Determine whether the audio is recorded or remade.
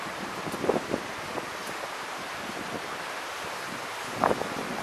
recorded